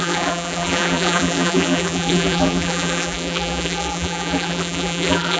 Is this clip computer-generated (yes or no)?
yes